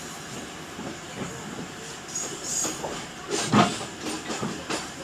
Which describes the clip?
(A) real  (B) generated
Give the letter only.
A